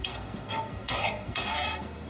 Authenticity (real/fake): fake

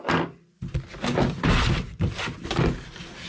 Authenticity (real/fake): real